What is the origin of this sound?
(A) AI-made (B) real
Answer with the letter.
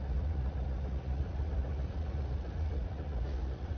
A